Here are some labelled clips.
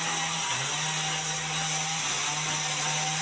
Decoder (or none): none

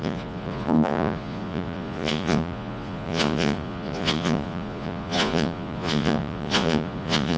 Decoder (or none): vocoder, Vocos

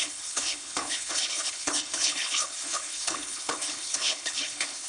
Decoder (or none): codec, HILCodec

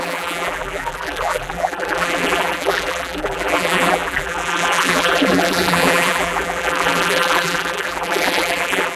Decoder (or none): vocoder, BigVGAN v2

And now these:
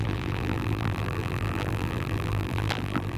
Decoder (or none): vocoder, BigVGAN v2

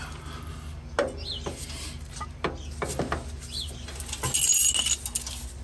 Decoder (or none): none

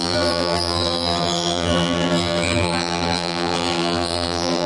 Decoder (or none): vocoder, BigVGAN v2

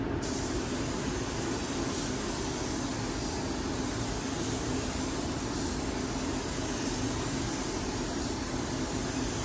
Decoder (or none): none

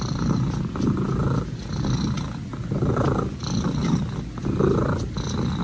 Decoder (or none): none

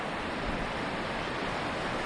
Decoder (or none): none